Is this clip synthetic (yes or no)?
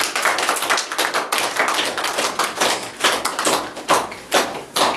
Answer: no